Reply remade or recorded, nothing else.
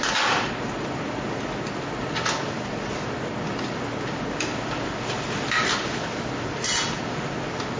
recorded